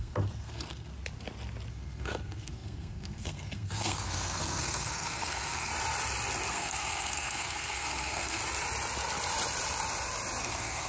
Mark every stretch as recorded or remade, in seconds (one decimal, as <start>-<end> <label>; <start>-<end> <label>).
0.0-0.9 remade; 0.9-1.7 recorded; 1.7-5.7 remade; 5.7-6.5 recorded; 6.5-8.4 remade; 8.4-10.4 recorded; 10.4-10.9 remade